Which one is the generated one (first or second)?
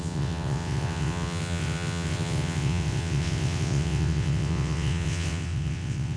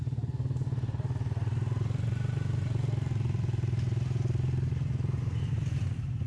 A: first